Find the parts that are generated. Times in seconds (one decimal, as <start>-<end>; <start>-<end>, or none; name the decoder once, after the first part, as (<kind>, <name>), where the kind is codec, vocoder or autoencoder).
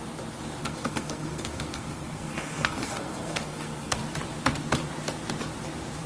0.6-4.0 (codec, SNAC)